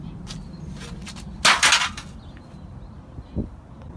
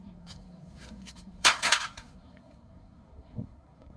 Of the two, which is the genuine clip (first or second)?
first